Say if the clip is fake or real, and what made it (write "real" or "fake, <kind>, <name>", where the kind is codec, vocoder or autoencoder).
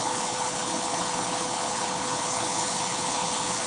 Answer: fake, codec, HILCodec